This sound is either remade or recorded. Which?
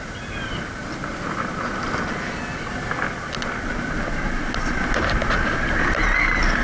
recorded